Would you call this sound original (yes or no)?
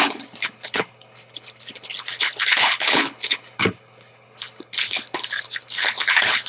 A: no